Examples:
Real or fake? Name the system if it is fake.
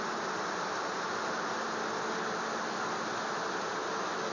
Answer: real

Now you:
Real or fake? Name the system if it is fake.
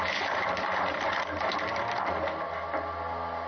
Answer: real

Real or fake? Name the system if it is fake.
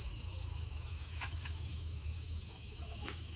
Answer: fake, autoencoder, DAC-VAE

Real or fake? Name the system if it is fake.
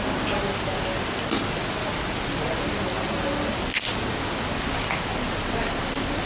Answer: real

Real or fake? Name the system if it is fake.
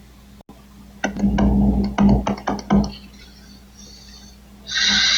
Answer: real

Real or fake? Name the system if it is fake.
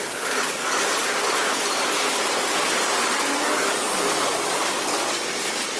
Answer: real